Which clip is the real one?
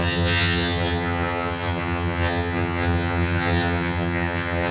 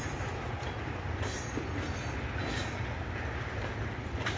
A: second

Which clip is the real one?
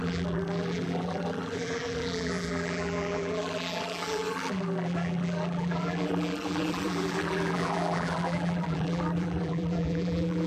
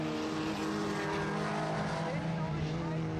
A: second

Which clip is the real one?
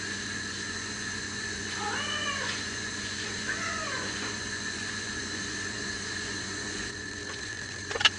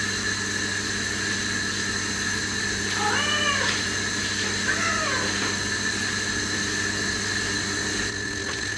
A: second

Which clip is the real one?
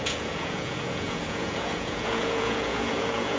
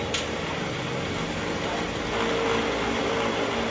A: second